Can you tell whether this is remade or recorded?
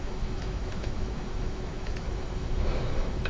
remade